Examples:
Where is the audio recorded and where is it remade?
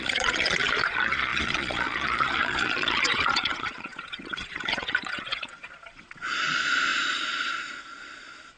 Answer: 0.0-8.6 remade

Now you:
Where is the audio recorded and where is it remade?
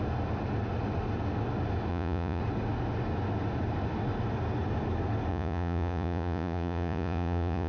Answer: 0.0-1.9 recorded; 1.9-2.4 remade; 2.4-5.3 recorded; 5.3-7.7 remade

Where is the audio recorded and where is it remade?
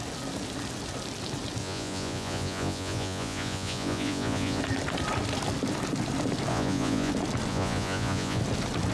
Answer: 0.0-1.6 recorded; 1.6-4.6 remade; 4.6-6.5 recorded; 6.5-7.1 remade; 7.1-7.5 recorded; 7.5-8.4 remade; 8.4-8.9 recorded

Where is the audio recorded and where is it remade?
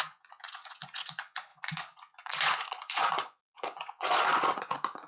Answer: 0.0-5.1 remade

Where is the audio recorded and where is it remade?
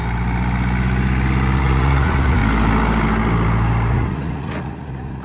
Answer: 0.0-1.6 recorded; 1.6-2.4 remade; 2.4-3.9 recorded; 3.9-5.2 remade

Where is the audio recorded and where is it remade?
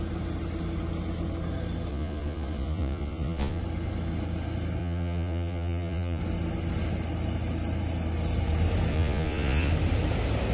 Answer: 0.0-1.9 recorded; 1.9-3.6 remade; 3.6-4.8 recorded; 4.8-6.2 remade; 6.2-8.9 recorded; 8.9-9.7 remade; 9.7-10.5 recorded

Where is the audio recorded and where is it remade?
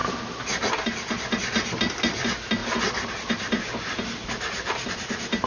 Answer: 0.0-5.5 recorded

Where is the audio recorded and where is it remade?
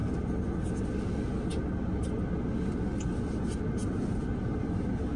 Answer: 0.0-5.2 recorded